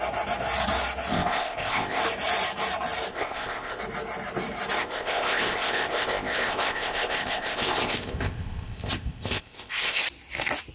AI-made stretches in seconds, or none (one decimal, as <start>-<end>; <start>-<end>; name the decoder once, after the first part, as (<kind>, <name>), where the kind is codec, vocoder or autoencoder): 1.1-2.0 (codec, ZipCodec); 3.1-3.8; 4.8-10.0